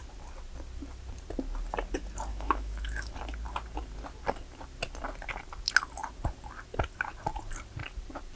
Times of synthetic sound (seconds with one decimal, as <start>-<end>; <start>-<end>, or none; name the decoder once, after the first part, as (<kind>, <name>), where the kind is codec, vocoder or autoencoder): 2.3-3.1 (autoencoder, DAC-VAE)